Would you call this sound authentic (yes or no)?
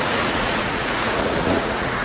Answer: no